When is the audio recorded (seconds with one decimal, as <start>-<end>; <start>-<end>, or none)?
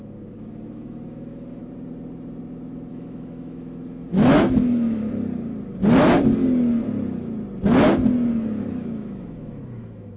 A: 1.6-2.9; 5.0-8.7